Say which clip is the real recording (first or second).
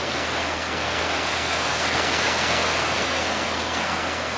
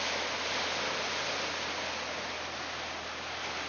second